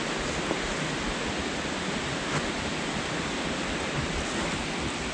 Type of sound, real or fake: real